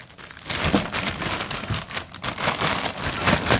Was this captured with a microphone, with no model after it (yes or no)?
yes